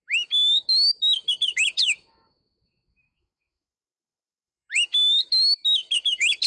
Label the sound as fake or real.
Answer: fake